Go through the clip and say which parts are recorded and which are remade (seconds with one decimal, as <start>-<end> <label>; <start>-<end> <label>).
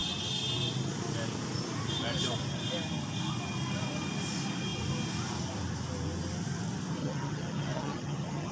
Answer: 0.0-7.0 recorded; 7.0-8.5 remade